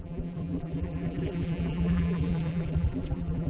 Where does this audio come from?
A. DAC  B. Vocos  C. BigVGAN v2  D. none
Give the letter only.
C